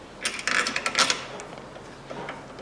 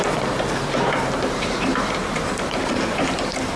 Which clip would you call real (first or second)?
first